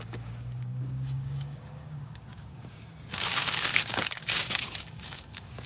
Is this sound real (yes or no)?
no